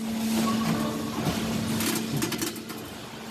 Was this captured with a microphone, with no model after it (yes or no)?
yes